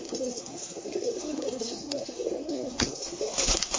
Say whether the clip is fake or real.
fake